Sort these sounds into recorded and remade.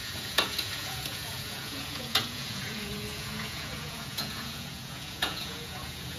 remade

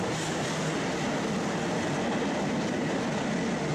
recorded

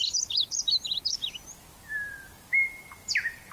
recorded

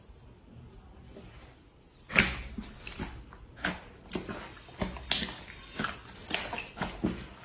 recorded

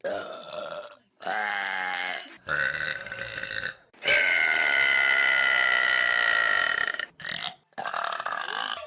recorded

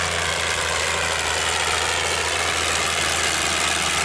recorded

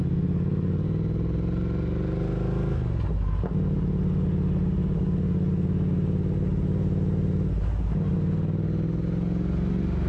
recorded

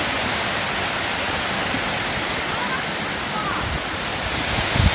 recorded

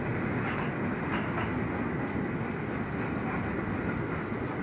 recorded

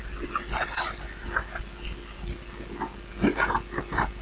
recorded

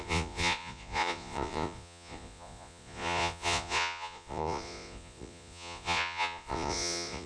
remade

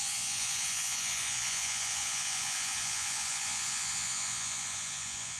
remade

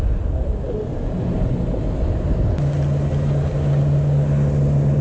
recorded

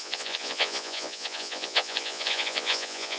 remade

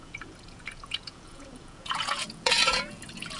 remade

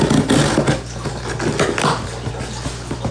recorded